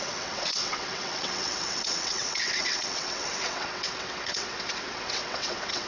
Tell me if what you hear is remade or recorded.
remade